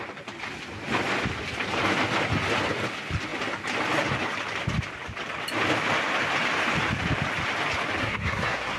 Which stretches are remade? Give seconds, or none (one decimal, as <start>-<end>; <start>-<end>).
8.0-8.8

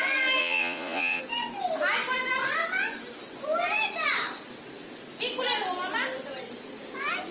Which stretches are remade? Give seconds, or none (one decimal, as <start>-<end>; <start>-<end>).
0.4-1.2

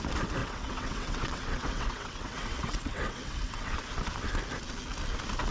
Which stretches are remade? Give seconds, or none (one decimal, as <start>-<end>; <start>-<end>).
0.4-3.7

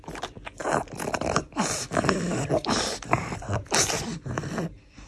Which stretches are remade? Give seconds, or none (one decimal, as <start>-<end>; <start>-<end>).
0.0-0.6; 3.4-5.1

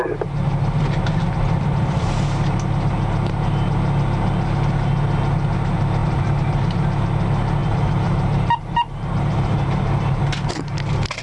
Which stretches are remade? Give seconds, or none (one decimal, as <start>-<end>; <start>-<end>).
1.4-2.2; 6.0-6.6; 7.6-10.2